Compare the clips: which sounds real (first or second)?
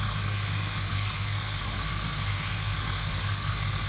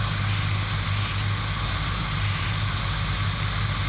second